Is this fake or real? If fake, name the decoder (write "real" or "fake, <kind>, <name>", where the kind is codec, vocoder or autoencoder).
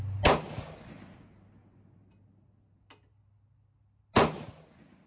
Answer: real